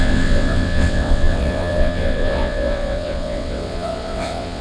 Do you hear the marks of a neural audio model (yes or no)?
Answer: yes